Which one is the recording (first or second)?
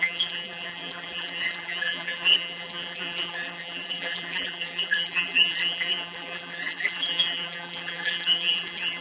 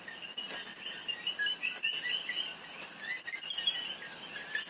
second